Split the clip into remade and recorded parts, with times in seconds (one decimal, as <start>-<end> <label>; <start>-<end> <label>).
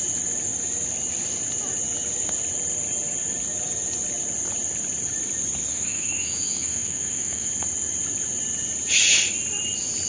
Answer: 0.0-5.7 recorded; 5.7-7.5 remade; 7.5-10.1 recorded